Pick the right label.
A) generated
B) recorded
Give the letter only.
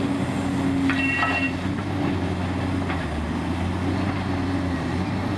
B